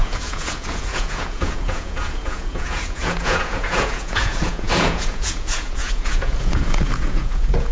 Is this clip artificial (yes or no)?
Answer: yes